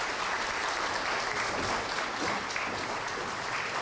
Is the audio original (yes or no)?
yes